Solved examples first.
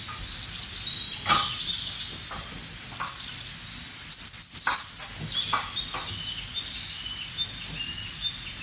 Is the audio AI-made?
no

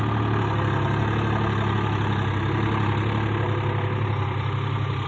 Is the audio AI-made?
no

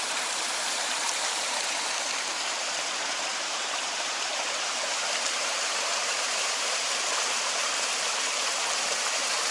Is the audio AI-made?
yes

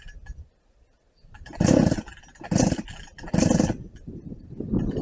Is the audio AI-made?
no